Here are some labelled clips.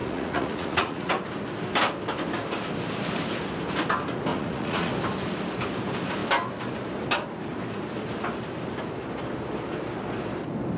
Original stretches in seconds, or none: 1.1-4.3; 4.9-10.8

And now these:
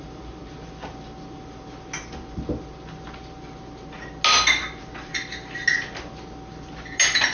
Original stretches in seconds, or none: 0.0-7.3